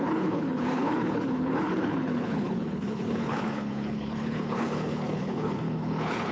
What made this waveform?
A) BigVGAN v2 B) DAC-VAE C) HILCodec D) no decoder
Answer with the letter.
C